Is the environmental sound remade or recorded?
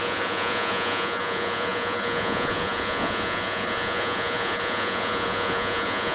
remade